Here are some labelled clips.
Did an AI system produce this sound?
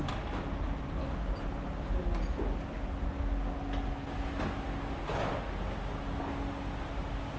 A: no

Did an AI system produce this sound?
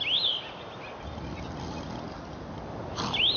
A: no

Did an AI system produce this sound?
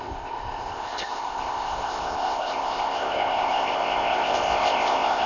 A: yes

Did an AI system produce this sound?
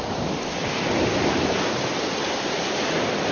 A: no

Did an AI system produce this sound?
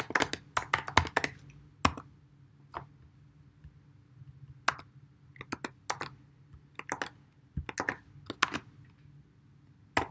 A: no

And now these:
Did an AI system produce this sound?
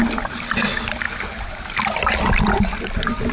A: no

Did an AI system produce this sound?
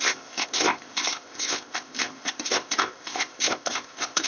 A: yes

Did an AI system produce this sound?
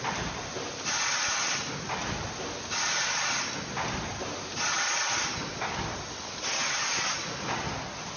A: no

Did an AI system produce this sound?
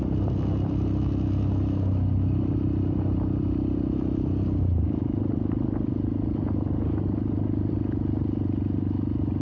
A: no